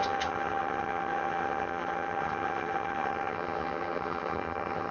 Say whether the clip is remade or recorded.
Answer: remade